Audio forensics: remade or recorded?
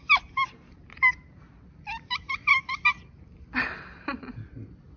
recorded